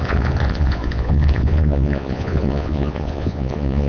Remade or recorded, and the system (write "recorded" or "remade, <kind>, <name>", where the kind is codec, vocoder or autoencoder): remade, vocoder, Vocos